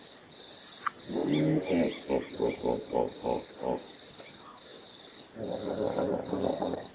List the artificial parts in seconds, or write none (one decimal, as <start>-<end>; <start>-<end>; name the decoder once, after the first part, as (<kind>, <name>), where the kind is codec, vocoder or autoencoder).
6.3-6.9 (codec, SNAC)